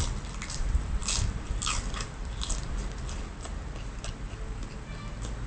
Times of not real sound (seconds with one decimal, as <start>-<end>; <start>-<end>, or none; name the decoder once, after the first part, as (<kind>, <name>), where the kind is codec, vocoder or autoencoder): none